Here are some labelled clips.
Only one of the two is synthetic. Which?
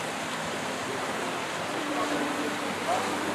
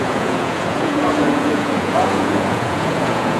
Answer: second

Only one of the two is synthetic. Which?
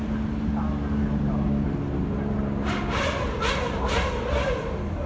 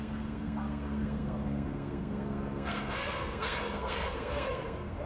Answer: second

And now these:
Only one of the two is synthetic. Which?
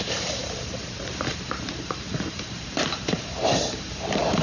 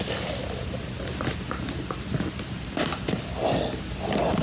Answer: first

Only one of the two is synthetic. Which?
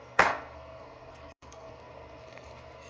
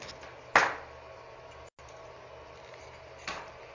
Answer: first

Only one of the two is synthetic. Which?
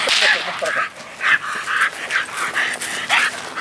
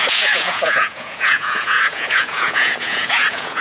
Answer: second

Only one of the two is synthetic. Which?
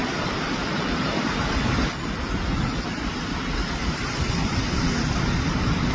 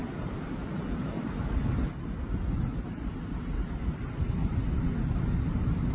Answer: first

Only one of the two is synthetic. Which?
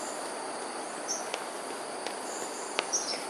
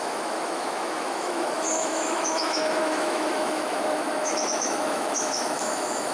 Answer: second